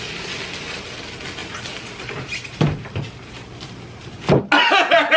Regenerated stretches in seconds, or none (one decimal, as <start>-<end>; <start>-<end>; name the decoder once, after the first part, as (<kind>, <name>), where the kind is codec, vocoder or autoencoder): 1.4-4.4 (vocoder, BigVGAN v2)